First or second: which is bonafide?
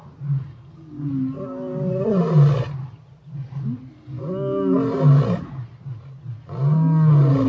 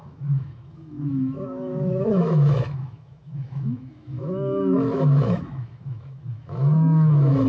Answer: first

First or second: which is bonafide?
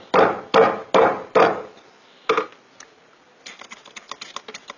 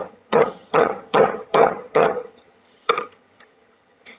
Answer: first